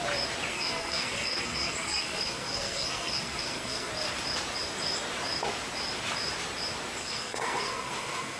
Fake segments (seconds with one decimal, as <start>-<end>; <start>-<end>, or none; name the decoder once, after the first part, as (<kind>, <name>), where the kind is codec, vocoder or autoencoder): 0.5-3.9 (codec, SNAC); 7.0-8.4